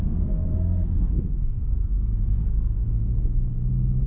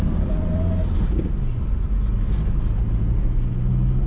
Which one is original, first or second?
second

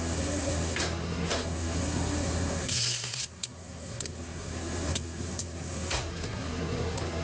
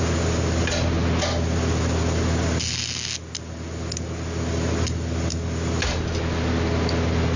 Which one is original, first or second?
second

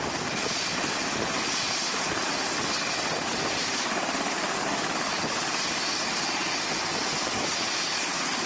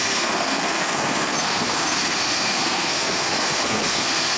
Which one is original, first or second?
first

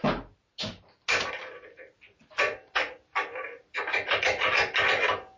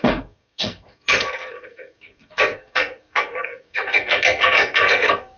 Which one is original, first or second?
first